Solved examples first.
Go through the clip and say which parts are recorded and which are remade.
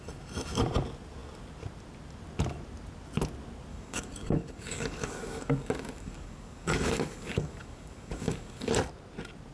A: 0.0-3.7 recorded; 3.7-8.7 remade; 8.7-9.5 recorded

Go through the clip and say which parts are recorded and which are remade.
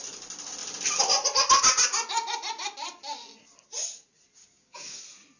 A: 0.0-4.4 recorded; 4.4-5.0 remade; 5.0-5.4 recorded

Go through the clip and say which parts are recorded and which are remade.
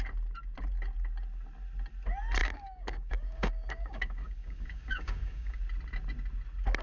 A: 0.0-2.4 recorded; 2.4-5.6 remade; 5.6-6.8 recorded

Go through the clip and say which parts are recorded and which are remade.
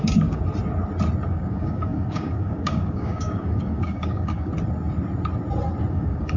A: 0.0-0.4 remade; 0.4-1.3 recorded; 1.3-4.5 remade; 4.5-5.9 recorded; 5.9-6.4 remade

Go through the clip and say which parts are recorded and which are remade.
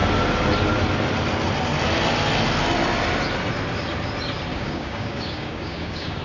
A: 0.0-4.5 recorded; 4.5-6.2 remade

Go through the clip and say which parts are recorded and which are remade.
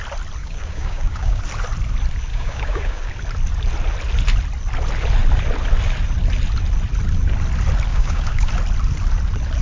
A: 0.0-0.4 recorded; 0.4-1.4 remade; 1.4-2.3 recorded; 2.3-3.1 remade; 3.1-7.9 recorded; 7.9-8.5 remade; 8.5-9.6 recorded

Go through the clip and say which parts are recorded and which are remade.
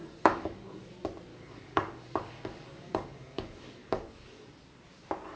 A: 0.0-0.9 remade; 0.9-1.3 recorded; 1.3-4.5 remade; 4.5-5.4 recorded